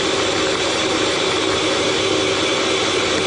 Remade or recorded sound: recorded